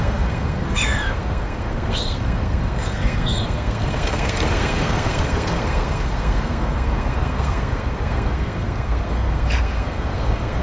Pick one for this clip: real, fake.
fake